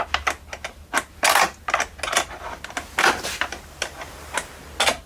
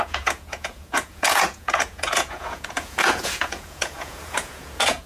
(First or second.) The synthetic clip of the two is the second